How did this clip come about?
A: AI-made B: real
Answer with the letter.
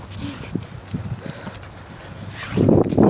B